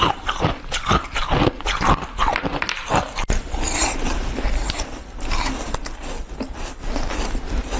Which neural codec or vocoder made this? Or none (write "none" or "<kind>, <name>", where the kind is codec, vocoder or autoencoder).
none